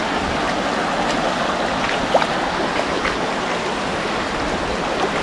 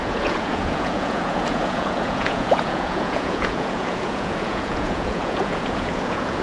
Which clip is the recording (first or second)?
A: first